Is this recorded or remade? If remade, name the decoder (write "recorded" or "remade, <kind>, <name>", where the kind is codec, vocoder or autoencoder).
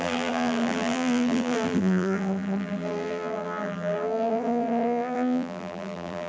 remade, vocoder, BigVGAN v2